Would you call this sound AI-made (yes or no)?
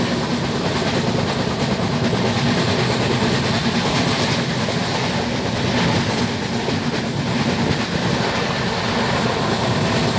no